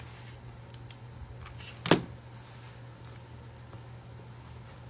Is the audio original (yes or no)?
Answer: yes